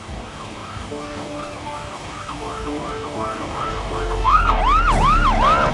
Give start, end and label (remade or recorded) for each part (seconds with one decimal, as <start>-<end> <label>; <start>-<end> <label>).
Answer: 0.0-4.6 remade; 4.6-5.7 recorded